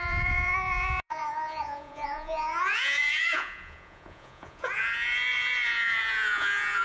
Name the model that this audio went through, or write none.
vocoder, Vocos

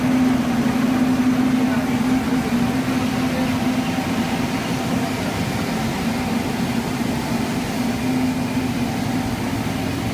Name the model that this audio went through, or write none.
none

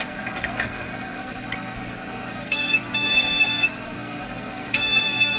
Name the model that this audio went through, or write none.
codec, SNAC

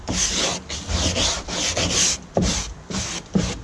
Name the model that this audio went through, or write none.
none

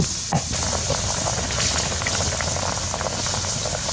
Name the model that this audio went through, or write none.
none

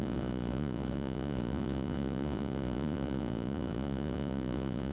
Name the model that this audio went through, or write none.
vocoder, Vocos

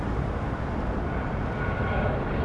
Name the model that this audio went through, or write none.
none